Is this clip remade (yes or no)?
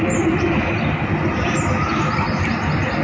no